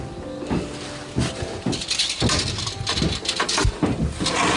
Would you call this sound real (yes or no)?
yes